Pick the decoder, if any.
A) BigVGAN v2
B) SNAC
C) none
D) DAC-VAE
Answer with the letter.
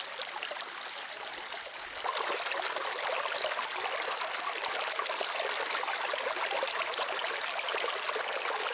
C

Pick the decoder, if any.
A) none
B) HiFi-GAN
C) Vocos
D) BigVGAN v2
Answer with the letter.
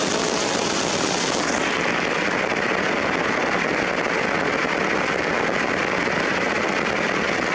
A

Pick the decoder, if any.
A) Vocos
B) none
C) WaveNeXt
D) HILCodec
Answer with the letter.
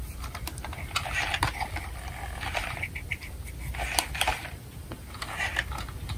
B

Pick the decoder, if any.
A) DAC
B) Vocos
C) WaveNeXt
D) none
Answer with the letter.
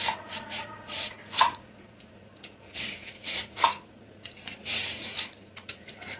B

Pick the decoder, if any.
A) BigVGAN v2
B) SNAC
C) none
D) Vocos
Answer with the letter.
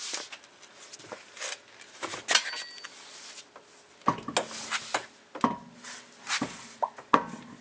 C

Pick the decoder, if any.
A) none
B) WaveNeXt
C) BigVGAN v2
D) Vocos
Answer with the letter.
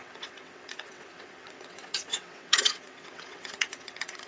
B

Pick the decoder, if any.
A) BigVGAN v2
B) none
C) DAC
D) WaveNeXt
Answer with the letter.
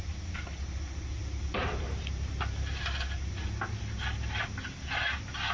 B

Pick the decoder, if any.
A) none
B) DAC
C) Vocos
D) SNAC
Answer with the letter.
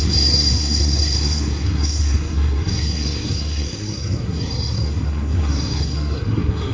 D